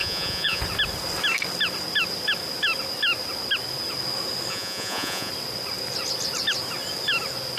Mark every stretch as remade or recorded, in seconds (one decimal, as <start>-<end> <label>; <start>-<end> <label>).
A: 0.0-0.6 remade; 0.6-4.5 recorded; 4.5-5.3 remade; 5.3-7.6 recorded